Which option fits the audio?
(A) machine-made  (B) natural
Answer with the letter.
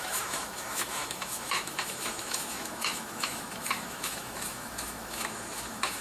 A